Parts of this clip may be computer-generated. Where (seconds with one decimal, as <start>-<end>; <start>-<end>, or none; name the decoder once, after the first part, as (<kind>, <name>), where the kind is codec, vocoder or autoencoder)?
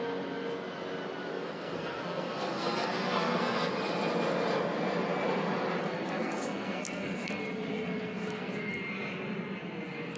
1.3-3.7 (codec, SNAC); 5.8-7.3; 7.7-8.8